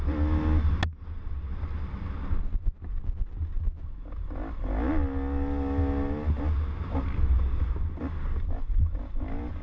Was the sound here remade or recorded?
recorded